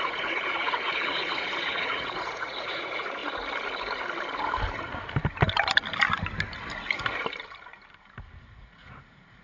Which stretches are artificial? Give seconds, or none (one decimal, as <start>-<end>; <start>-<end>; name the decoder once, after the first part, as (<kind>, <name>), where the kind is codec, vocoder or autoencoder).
0.0-3.2 (vocoder, Vocos); 8.4-9.4